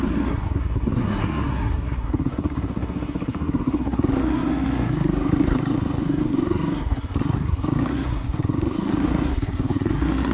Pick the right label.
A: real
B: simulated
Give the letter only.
B